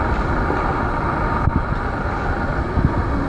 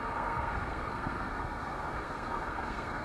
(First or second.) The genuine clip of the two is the first